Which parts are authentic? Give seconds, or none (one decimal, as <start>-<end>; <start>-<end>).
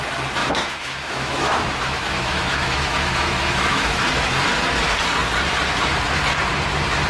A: 0.0-0.4; 4.0-7.1